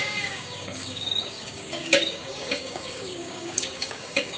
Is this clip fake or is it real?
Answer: fake